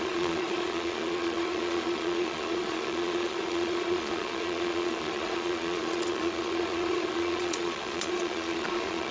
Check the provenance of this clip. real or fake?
fake